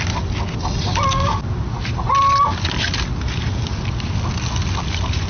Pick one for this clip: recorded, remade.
recorded